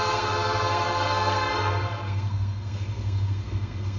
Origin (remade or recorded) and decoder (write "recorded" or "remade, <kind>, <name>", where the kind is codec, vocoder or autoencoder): remade, codec, SNAC